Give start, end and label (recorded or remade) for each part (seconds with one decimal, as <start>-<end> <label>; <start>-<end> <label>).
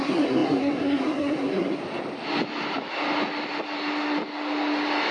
0.0-1.8 remade; 1.8-5.1 recorded